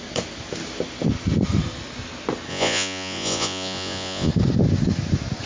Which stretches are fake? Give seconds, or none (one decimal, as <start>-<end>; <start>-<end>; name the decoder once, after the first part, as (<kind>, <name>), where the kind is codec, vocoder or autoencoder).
2.5-4.3 (vocoder, Vocos)